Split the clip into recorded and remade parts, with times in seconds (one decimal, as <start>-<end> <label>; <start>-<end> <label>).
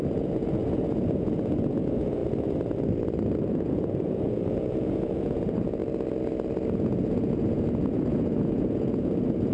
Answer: 0.0-2.2 remade; 2.2-3.5 recorded; 3.5-5.8 remade; 5.8-6.7 recorded; 6.7-9.5 remade